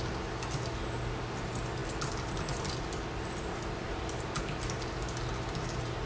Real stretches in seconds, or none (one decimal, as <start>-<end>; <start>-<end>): 0.0-6.1